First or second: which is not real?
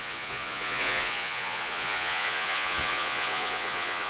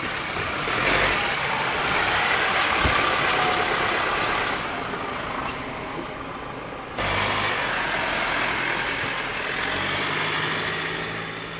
first